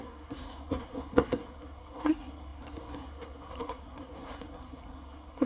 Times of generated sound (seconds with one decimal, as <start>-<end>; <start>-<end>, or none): 0.0-5.5

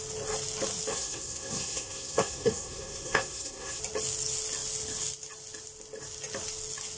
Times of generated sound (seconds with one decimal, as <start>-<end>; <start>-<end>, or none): 0.9-3.8

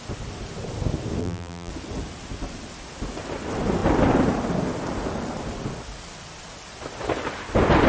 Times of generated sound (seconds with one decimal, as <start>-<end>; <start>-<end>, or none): 1.2-1.7

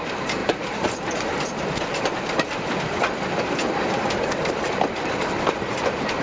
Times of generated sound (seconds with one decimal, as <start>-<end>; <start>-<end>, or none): 0.0-6.2